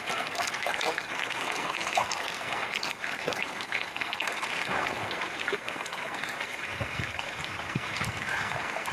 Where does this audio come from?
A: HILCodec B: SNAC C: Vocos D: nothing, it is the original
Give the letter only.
B